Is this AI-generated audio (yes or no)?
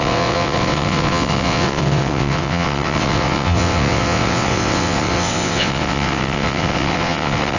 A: yes